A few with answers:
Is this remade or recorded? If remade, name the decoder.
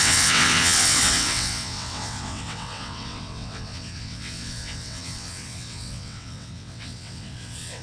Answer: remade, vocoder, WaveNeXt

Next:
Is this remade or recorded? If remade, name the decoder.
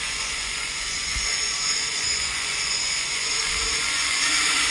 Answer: remade, vocoder, Vocos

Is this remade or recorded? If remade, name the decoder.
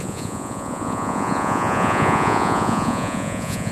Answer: remade, vocoder, Vocos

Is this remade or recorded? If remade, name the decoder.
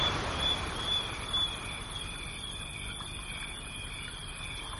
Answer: recorded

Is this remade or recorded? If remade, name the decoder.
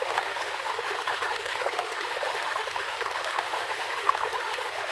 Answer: remade, autoencoder, DAC-VAE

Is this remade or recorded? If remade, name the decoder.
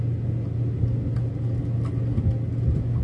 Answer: recorded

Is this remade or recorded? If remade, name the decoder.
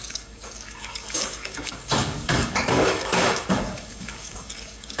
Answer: remade, codec, DAC